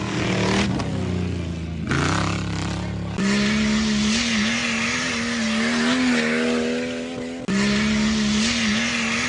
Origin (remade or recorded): recorded